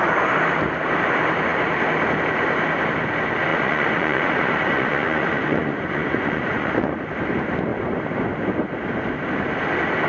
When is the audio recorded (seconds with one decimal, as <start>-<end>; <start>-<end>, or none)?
0.0-3.5; 7.0-10.1